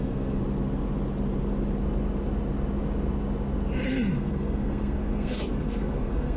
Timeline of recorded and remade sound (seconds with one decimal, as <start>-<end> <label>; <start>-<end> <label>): 0.0-0.4 remade; 0.4-4.1 recorded; 4.1-6.4 remade